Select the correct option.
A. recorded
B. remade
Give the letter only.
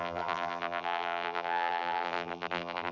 B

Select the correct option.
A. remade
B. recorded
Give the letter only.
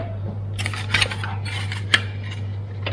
B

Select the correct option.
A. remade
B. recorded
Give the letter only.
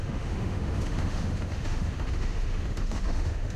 A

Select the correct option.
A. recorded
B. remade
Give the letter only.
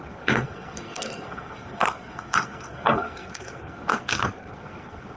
B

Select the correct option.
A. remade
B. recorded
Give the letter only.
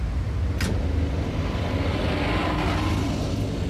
B